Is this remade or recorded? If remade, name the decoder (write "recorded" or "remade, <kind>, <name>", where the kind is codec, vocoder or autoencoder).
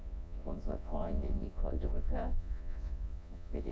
remade, vocoder, Vocos